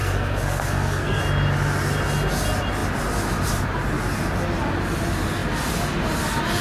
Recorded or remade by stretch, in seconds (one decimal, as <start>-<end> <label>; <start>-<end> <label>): 0.0-1.2 remade; 1.2-6.6 recorded